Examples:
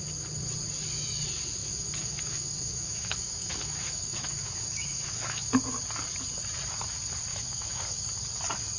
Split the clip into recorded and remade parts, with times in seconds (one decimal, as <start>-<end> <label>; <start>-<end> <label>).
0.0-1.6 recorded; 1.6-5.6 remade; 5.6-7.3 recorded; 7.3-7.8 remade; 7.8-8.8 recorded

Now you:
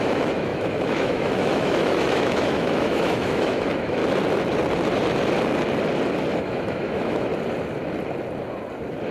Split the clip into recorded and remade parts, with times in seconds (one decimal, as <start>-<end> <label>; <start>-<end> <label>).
0.0-4.0 remade; 4.0-6.4 recorded; 6.4-7.3 remade; 7.3-9.1 recorded

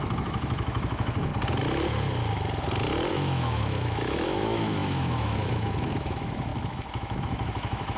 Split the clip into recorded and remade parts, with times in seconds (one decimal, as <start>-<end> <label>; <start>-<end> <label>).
0.0-1.3 remade; 1.3-3.1 recorded; 3.1-8.0 remade